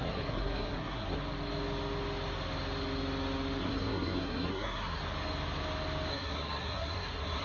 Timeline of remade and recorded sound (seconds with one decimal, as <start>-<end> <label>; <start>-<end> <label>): 0.0-1.2 remade; 1.2-3.6 recorded; 3.6-5.0 remade; 5.0-6.1 recorded; 6.1-7.4 remade